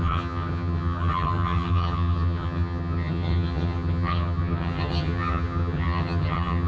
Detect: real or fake fake